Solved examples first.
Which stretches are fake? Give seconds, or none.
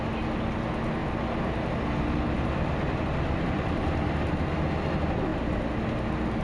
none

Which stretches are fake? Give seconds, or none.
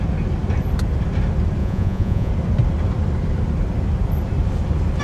1.6-2.3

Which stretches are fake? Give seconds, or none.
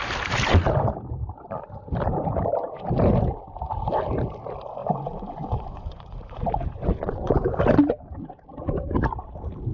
4.8-7.6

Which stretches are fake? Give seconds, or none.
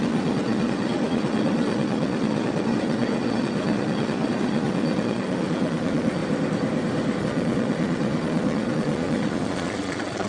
0.0-6.2; 7.2-10.3